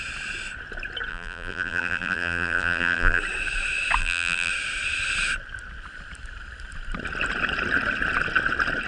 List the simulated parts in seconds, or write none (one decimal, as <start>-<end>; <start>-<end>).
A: 1.1-3.2; 4.0-4.5